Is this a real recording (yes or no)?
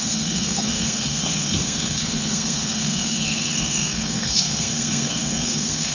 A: no